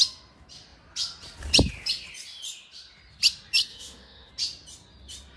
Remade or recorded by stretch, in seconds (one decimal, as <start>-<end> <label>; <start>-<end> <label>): 0.0-3.7 recorded; 3.7-4.3 remade; 4.3-5.4 recorded